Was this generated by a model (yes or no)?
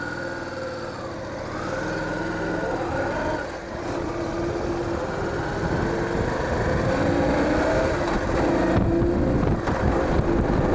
no